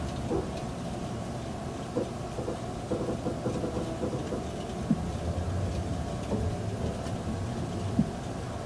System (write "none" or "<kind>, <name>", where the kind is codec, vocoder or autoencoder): none